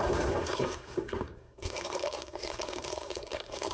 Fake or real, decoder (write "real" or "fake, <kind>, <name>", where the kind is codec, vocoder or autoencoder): fake, codec, SNAC